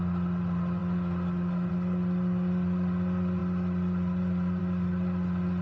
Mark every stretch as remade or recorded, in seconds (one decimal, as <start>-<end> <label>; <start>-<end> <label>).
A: 0.0-5.6 recorded